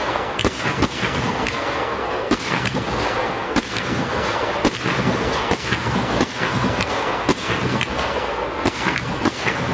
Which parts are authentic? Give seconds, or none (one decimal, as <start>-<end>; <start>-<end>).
4.5-5.0